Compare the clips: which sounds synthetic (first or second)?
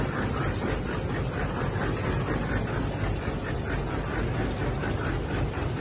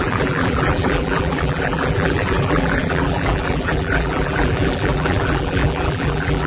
second